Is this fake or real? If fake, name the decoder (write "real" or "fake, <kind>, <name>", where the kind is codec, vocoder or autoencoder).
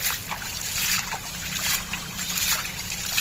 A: fake, vocoder, BigVGAN v2